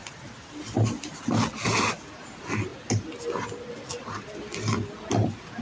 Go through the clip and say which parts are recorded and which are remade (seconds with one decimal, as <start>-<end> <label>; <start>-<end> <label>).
0.0-5.6 recorded